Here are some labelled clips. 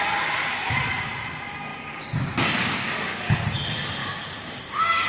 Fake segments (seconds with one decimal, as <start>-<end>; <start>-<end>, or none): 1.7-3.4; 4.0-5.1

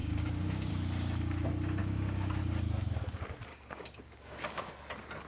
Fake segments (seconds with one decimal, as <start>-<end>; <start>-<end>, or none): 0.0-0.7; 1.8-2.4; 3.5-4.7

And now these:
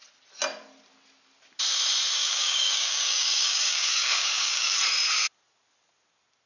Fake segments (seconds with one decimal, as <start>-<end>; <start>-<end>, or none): 2.2-4.8

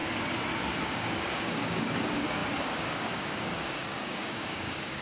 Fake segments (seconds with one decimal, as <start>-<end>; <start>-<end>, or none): 0.8-5.0

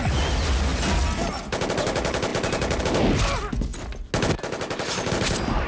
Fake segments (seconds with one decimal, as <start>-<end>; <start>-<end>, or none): none